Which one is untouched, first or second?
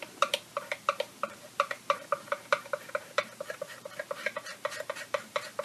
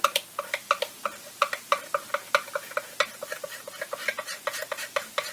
second